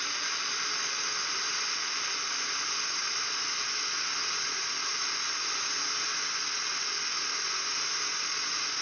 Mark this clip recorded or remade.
recorded